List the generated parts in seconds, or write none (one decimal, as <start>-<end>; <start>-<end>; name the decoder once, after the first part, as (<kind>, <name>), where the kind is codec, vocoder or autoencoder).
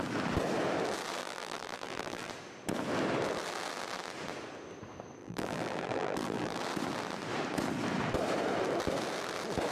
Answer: 1.2-2.3 (vocoder, BigVGAN v2); 5.2-6.6